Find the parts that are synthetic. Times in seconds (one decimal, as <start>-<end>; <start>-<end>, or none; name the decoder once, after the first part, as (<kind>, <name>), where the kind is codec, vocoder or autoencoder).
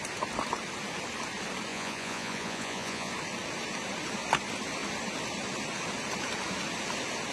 1.7-3.1 (vocoder, Vocos)